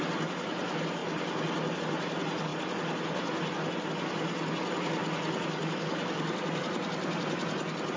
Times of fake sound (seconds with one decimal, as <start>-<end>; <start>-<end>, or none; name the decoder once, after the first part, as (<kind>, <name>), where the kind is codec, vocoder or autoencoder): 5.0-6.6 (vocoder, BigVGAN v2)